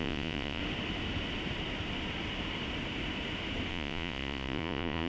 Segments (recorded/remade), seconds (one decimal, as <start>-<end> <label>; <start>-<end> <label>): 0.0-0.6 remade; 0.6-3.7 recorded; 3.7-5.1 remade